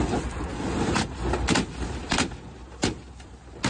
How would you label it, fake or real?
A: real